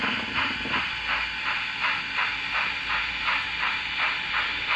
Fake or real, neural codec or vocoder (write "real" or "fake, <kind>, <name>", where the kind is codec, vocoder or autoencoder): real